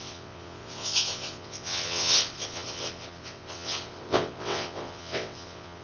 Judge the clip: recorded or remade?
remade